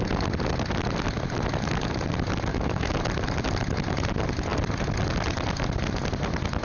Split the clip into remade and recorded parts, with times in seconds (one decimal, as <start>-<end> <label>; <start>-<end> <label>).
0.0-2.5 recorded; 2.5-3.0 remade; 3.0-6.6 recorded